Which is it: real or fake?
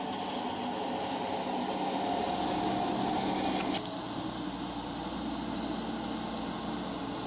real